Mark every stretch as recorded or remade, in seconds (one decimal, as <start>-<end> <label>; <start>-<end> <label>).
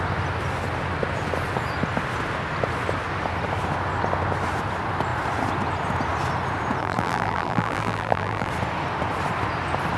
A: 0.0-6.8 recorded; 6.8-8.5 remade; 8.5-10.0 recorded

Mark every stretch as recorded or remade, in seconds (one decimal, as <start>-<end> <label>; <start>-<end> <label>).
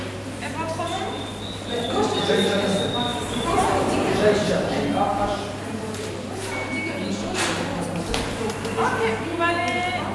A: 0.0-3.1 recorded; 3.1-6.3 remade; 6.3-10.1 recorded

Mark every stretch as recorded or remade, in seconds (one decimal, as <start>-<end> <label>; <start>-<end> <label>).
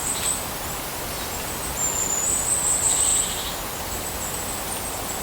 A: 0.0-2.0 recorded; 2.0-3.1 remade; 3.1-3.8 recorded; 3.8-5.2 remade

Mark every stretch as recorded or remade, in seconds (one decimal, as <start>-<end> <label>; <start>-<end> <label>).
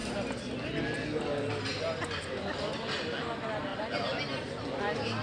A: 0.0-3.7 recorded; 3.7-4.5 remade; 4.5-5.2 recorded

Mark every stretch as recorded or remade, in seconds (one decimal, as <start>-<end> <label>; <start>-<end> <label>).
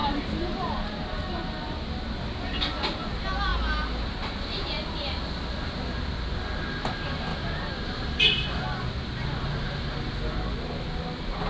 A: 0.0-1.8 remade; 1.8-7.3 recorded; 7.3-8.6 remade; 8.6-11.5 recorded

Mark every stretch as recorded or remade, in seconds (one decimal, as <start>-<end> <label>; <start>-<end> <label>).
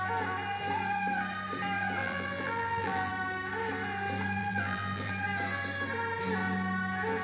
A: 0.0-2.0 recorded; 2.0-3.1 remade; 3.1-4.4 recorded; 4.4-5.1 remade; 5.1-7.2 recorded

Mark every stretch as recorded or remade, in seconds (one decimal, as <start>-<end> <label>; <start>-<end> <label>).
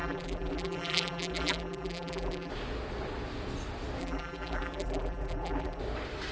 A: 0.0-2.5 remade; 2.5-4.0 recorded; 4.0-5.8 remade; 5.8-6.3 recorded